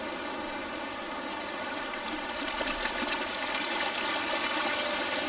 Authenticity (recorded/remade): recorded